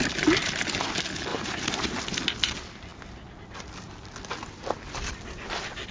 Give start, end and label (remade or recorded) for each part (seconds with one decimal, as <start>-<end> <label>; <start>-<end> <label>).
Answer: 0.0-1.3 recorded; 1.3-1.9 remade; 1.9-5.9 recorded